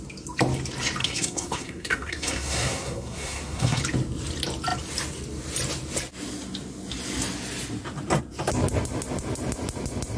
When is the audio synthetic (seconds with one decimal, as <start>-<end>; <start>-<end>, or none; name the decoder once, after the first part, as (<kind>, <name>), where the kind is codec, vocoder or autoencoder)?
1.0-3.8 (codec, SNAC)